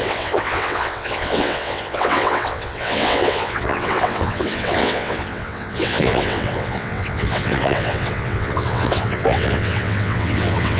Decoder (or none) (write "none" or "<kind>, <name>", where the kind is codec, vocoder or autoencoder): vocoder, WaveNeXt